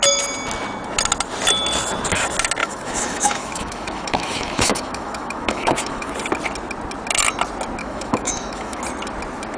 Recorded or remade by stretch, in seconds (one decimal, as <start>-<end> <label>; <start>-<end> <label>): 0.0-2.6 recorded; 2.6-6.1 remade; 6.1-7.8 recorded; 7.8-8.8 remade; 8.8-9.6 recorded